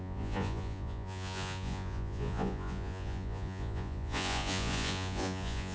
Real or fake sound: fake